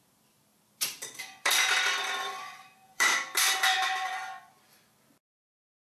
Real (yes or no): no